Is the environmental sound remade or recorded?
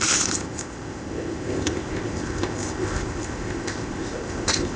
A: remade